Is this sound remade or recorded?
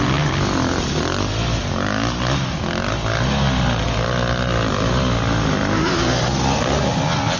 recorded